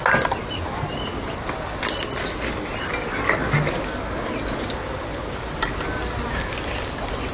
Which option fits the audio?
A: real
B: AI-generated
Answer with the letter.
A